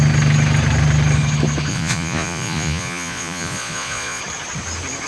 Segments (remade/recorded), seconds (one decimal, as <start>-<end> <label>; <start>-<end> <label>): 0.0-1.7 recorded; 1.7-4.2 remade; 4.2-5.1 recorded